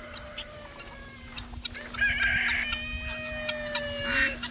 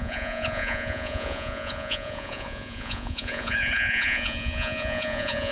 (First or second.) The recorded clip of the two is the first